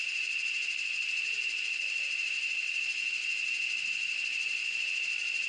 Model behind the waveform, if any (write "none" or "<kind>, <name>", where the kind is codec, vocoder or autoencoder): vocoder, BigVGAN v2